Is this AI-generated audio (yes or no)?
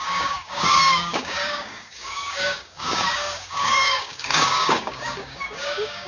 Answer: yes